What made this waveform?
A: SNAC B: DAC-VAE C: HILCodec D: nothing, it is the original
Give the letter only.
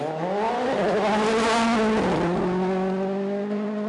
D